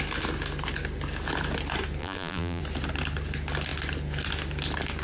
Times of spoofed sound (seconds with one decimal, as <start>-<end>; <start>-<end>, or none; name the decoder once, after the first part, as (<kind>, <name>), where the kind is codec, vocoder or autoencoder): 2.0-2.6 (vocoder, BigVGAN v2)